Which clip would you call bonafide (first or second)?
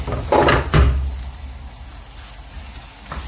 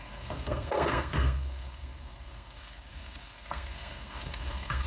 first